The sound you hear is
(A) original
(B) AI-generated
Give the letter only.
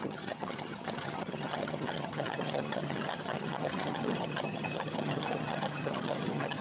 B